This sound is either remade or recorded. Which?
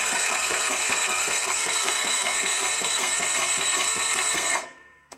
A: remade